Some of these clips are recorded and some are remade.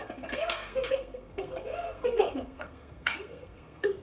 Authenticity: remade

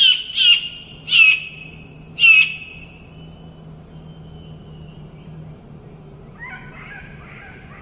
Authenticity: recorded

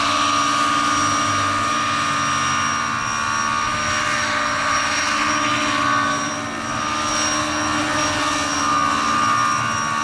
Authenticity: recorded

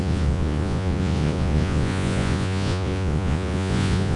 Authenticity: remade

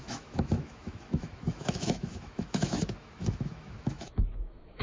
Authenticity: remade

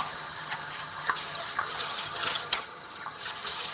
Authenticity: remade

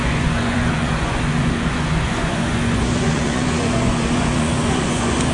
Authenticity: remade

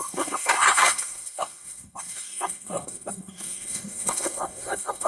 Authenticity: remade